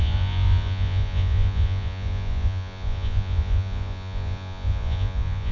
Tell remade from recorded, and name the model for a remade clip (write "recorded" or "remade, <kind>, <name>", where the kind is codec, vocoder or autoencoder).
remade, vocoder, Vocos